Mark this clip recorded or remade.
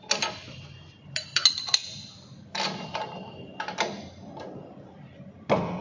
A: recorded